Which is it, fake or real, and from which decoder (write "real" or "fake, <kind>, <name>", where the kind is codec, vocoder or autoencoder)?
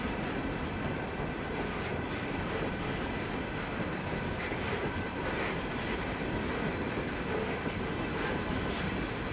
real